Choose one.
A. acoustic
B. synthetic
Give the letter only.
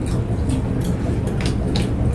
A